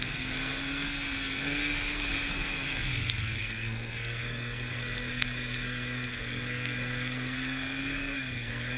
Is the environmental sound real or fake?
fake